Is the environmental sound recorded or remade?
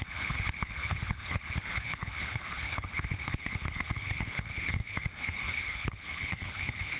remade